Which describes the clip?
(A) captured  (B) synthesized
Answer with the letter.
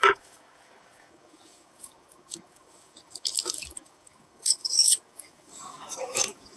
B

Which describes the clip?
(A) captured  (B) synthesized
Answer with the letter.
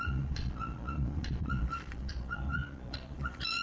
B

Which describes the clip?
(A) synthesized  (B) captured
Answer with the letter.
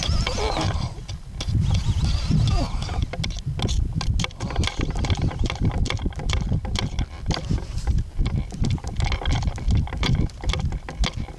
B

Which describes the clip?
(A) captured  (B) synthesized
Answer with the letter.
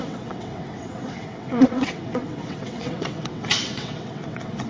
B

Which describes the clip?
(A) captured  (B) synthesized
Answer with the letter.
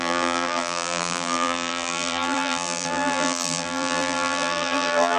B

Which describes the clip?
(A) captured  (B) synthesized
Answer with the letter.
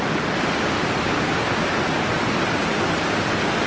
A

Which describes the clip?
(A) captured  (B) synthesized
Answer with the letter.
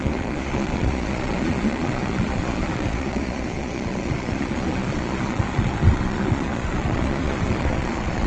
B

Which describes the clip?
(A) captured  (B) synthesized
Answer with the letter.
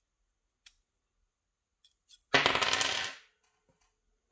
A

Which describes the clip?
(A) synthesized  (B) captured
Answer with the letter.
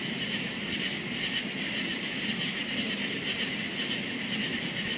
B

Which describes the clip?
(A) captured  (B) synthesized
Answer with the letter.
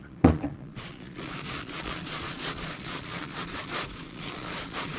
B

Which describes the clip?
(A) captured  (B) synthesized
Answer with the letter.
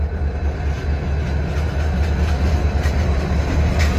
A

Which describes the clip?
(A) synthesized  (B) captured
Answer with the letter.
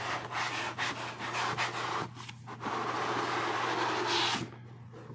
B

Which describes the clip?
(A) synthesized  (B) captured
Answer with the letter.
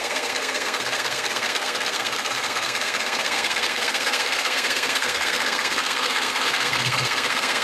A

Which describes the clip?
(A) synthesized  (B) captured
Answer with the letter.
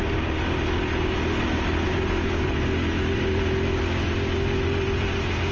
B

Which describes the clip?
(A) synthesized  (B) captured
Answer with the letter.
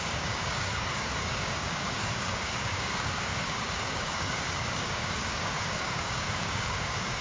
A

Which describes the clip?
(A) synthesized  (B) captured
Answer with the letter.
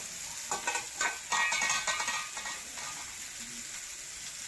B